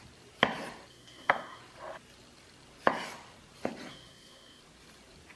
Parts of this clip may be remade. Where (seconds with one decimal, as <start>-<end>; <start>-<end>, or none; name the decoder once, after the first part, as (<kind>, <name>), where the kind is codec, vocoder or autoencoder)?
0.9-1.6 (codec, SNAC); 3.9-4.6